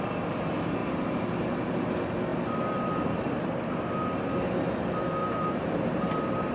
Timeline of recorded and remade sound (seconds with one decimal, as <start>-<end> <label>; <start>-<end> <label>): 0.0-0.8 recorded; 0.8-1.7 remade; 1.7-5.2 recorded; 5.2-6.5 remade